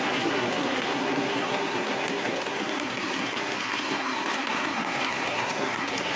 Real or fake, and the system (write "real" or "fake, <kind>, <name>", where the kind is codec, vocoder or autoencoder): fake, codec, SNAC